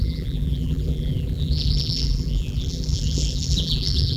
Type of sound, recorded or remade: remade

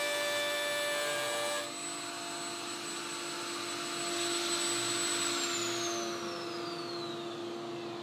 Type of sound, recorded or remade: recorded